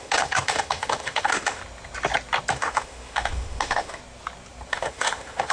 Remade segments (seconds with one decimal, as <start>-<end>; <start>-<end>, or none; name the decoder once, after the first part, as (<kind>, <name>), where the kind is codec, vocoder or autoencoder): 0.0-1.6 (autoencoder, DAC-VAE); 2.5-4.0; 4.7-5.5